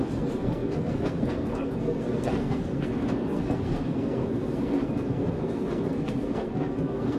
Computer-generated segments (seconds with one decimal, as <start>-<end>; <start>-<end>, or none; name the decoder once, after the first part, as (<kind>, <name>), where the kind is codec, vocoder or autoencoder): 0.0-7.2 (codec, SNAC)